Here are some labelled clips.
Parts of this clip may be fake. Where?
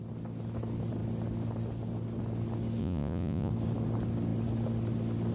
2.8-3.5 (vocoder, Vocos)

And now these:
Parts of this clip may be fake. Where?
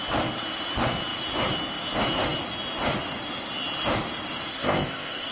4.5-5.3 (codec, ZipCodec)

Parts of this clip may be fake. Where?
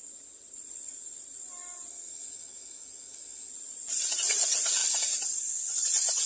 1.9-3.5 (autoencoder, DAC-VAE)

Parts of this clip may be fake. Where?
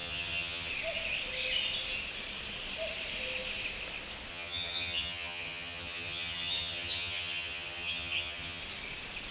0.0-0.7 (vocoder, HiFi-GAN); 4.3-8.6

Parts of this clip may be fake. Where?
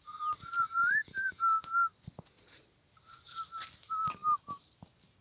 0.6-1.4 (vocoder, Vocos)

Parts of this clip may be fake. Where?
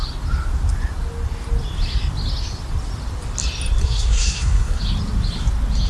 3.8-4.8 (codec, SNAC)